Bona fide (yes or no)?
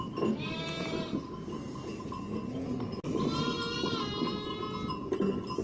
yes